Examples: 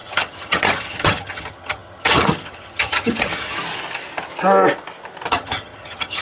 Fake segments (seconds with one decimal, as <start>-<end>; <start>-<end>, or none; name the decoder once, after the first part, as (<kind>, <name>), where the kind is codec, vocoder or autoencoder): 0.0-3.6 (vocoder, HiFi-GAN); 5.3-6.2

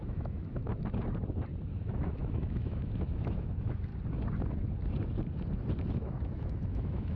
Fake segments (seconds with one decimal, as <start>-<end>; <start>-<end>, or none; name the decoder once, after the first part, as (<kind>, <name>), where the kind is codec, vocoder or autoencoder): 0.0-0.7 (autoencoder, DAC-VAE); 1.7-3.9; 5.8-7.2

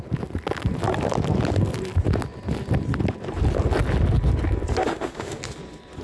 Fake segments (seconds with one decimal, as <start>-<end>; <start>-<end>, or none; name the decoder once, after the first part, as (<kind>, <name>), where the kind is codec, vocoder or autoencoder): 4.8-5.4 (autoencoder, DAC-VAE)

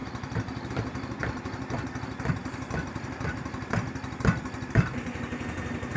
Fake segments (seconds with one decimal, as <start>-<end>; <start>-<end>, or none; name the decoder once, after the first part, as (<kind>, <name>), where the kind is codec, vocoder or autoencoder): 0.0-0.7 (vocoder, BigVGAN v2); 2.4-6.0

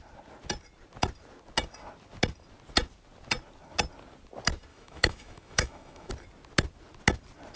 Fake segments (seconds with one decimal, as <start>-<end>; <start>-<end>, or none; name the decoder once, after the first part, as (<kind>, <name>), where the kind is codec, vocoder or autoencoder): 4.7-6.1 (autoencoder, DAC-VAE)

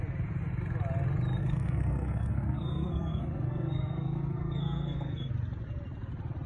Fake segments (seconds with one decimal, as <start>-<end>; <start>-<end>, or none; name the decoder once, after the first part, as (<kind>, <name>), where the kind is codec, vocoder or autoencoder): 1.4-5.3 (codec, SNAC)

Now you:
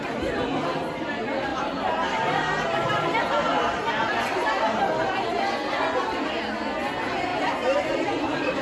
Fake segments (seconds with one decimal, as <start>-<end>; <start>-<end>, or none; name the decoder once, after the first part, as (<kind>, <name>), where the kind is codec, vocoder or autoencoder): 7.3-8.6 (vocoder, BigVGAN v2)

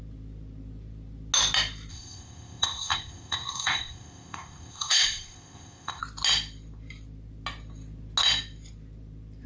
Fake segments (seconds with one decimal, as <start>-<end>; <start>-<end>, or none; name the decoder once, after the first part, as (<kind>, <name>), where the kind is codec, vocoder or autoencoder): 1.9-6.0 (codec, ZipCodec)